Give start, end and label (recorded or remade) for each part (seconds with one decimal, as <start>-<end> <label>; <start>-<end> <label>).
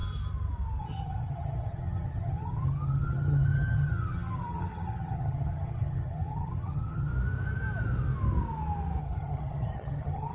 0.0-0.8 recorded; 0.8-7.1 remade; 7.1-9.0 recorded; 9.0-10.3 remade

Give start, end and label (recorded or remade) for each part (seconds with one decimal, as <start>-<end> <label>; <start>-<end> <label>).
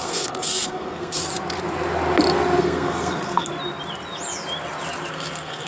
0.0-1.2 remade; 1.2-2.6 recorded; 2.6-3.5 remade; 3.5-5.1 recorded; 5.1-5.7 remade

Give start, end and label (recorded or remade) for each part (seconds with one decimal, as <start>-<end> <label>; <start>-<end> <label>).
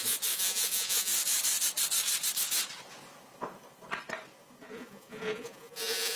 0.0-1.1 remade; 1.1-4.7 recorded; 4.7-6.2 remade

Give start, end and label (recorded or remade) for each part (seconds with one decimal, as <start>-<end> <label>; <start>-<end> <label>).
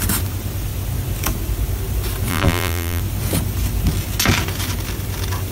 0.0-2.3 recorded; 2.3-3.0 remade; 3.0-5.5 recorded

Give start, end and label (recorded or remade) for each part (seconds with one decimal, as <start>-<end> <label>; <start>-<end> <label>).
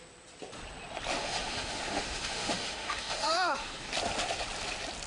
0.0-1.2 recorded; 1.2-3.9 remade; 3.9-5.1 recorded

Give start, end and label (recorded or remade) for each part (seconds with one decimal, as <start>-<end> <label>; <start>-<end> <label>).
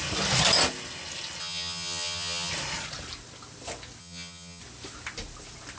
0.0-1.4 recorded; 1.4-2.5 remade; 2.5-4.0 recorded; 4.0-4.6 remade; 4.6-5.8 recorded